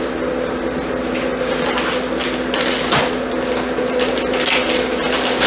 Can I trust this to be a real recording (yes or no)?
yes